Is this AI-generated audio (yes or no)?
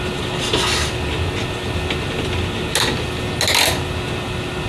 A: no